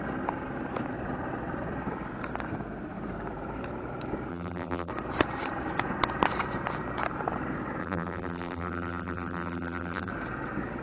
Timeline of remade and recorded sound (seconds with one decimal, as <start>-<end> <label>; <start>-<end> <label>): 0.0-4.3 recorded; 4.3-4.9 remade; 4.9-7.8 recorded; 7.8-10.1 remade; 10.1-10.8 recorded